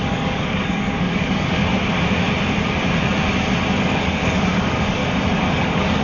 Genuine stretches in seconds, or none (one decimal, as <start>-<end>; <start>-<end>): 1.7-3.8; 5.0-5.6